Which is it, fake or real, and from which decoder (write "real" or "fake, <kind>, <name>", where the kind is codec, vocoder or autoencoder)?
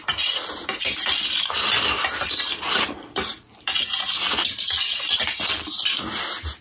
real